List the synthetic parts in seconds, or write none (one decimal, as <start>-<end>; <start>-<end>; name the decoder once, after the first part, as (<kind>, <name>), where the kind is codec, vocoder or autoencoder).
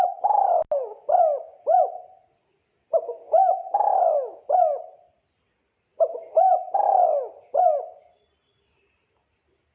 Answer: 3.6-4.4 (autoencoder, DAC-VAE)